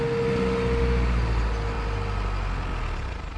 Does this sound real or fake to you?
real